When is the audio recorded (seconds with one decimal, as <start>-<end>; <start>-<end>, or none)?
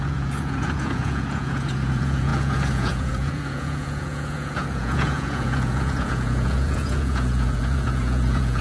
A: none